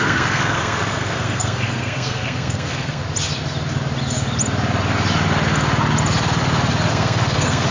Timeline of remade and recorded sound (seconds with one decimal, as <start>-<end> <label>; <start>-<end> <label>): 0.0-3.0 remade; 3.0-6.9 recorded; 6.9-7.7 remade